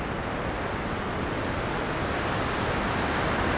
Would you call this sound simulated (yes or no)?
no